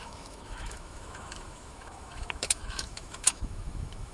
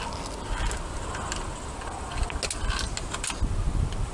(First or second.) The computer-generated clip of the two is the first